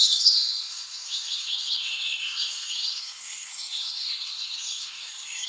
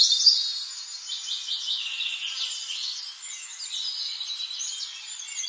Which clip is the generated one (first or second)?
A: first